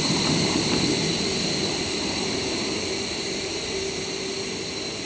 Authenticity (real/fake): fake